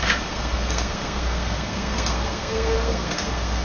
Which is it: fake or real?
fake